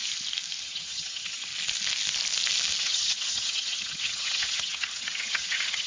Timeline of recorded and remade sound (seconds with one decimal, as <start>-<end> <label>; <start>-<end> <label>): 0.0-0.6 recorded; 0.6-1.5 remade; 1.5-2.8 recorded; 2.8-5.9 remade